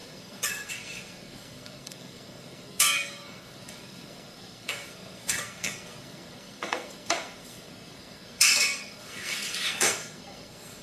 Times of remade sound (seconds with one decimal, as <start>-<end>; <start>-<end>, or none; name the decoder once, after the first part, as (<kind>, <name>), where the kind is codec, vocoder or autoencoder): 0.0-10.8 (codec, SNAC)